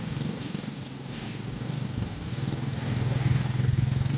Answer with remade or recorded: remade